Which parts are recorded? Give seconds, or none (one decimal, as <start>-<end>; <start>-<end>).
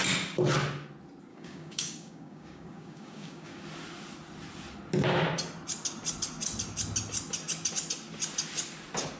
0.0-1.3; 3.6-9.2